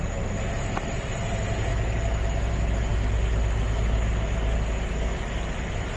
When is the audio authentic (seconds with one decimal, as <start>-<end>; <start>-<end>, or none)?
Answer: 0.0-6.0